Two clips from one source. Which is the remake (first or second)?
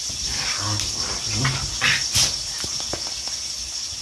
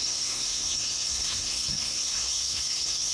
second